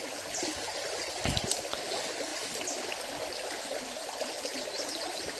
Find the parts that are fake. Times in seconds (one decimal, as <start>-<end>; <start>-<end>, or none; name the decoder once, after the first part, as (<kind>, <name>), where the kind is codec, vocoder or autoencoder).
none